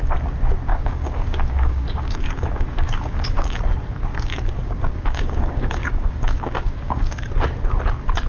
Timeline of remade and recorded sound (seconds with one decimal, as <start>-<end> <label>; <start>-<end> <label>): 0.0-0.7 recorded; 0.7-3.6 remade; 3.6-4.1 recorded; 4.1-7.3 remade; 7.3-8.3 recorded